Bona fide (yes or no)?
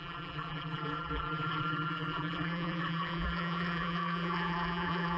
no